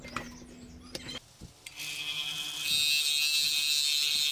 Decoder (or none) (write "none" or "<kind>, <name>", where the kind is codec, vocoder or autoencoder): none